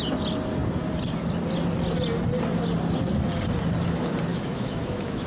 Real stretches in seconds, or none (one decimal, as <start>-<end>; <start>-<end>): 0.0-4.3